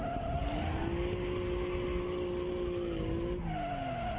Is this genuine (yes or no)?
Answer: yes